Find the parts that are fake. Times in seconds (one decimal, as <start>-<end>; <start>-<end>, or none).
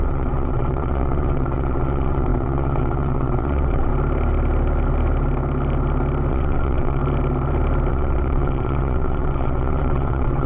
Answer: 0.0-3.9; 6.3-7.0; 7.9-10.5